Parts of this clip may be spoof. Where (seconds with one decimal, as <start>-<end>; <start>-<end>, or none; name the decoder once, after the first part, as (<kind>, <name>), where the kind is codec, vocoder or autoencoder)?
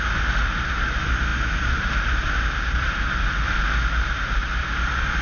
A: none